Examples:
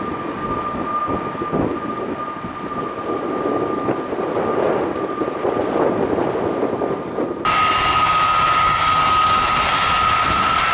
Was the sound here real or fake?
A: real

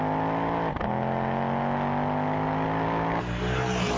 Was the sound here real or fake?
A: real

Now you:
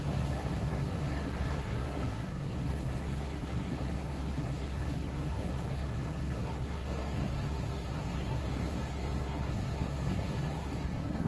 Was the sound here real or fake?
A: fake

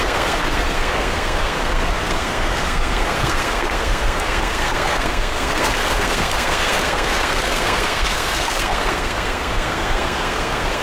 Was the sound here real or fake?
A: fake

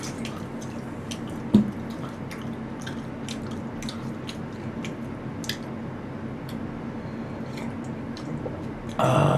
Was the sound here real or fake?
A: real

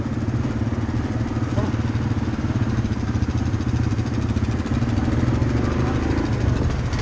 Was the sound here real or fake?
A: real